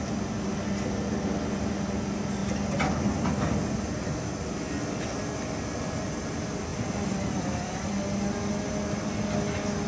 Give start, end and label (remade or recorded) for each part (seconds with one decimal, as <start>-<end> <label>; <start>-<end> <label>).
0.0-6.7 recorded; 6.7-7.9 remade; 7.9-9.9 recorded

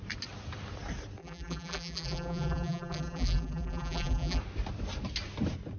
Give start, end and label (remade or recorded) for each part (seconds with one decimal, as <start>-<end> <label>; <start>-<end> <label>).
0.0-1.2 recorded; 1.2-4.4 remade; 4.4-5.8 recorded

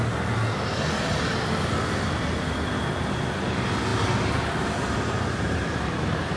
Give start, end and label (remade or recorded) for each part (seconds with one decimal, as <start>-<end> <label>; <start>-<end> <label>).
0.0-3.9 recorded; 3.9-6.4 remade